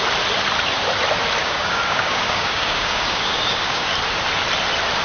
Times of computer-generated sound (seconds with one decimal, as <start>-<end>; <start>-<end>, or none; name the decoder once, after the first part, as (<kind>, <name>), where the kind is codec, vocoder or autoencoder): 1.4-3.9 (codec, DAC)